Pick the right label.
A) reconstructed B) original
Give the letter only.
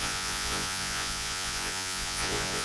A